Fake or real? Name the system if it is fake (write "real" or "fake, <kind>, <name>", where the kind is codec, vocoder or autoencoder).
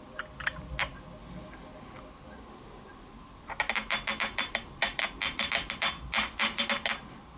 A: real